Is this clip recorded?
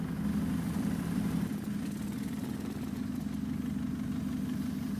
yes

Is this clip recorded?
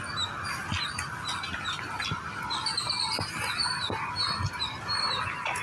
yes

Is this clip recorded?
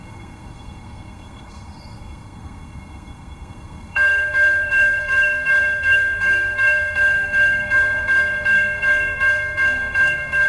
no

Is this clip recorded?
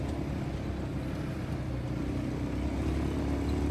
yes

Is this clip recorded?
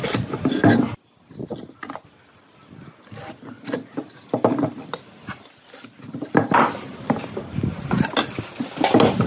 yes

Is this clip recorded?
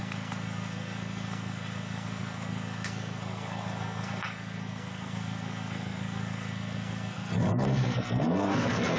no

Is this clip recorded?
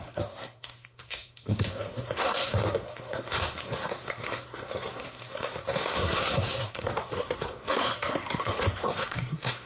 no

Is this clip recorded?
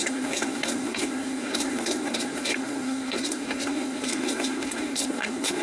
no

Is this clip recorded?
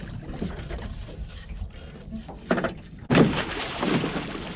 yes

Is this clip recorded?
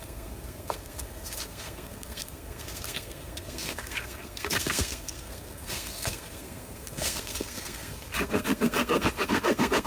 no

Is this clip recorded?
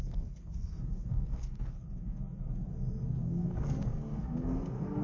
no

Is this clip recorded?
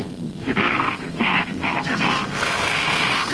no